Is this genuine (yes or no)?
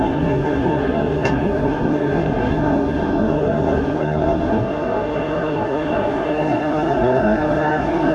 no